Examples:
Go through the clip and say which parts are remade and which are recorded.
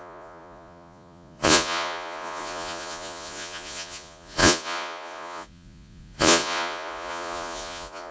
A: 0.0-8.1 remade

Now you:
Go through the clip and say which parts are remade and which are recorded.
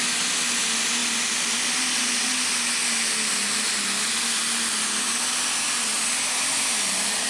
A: 0.0-1.0 recorded; 1.0-1.6 remade; 1.6-7.3 recorded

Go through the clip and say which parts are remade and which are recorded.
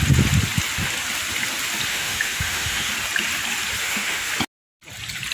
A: 0.0-1.9 recorded; 1.9-2.9 remade; 2.9-3.8 recorded; 3.8-4.3 remade; 4.3-5.3 recorded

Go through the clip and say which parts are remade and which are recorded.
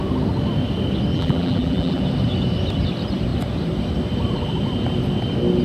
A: 0.0-1.1 recorded; 1.1-2.0 remade; 2.0-5.6 recorded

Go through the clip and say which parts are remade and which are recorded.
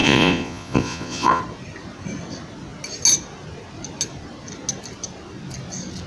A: 0.0-1.4 remade; 1.4-6.1 recorded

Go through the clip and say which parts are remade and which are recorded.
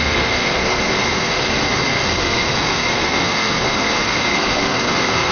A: 0.0-5.3 remade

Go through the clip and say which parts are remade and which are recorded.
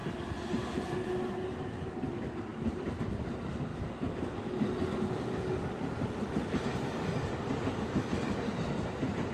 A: 0.0-9.3 recorded